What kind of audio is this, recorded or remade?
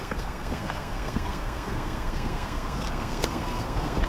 remade